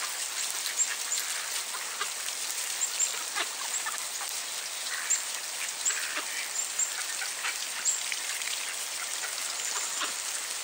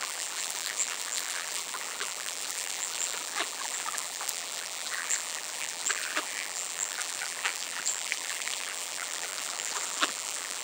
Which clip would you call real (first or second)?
first